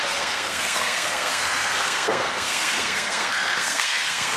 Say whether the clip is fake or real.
fake